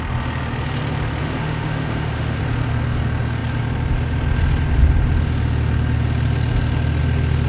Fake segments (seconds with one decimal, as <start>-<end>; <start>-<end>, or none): 1.2-2.4